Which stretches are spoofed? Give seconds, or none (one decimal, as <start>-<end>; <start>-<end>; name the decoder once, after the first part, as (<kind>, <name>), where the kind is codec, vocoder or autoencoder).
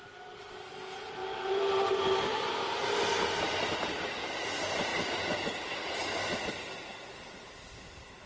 0.0-8.3 (vocoder, BigVGAN v2)